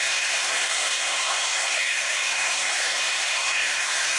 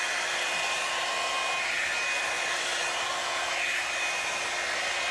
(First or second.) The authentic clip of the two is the second